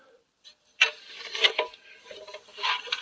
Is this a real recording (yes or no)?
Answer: yes